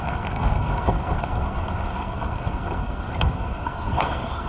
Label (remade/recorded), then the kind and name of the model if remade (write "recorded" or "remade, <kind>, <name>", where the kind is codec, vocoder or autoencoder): remade, codec, SNAC